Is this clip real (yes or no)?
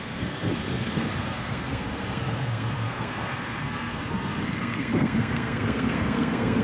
no